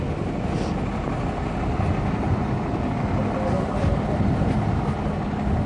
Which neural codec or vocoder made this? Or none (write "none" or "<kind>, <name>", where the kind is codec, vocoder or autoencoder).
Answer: none